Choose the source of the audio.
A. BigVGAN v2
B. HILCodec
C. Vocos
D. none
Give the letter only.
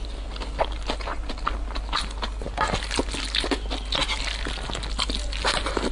D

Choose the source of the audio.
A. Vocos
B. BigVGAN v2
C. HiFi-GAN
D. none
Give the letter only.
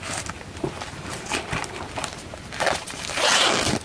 D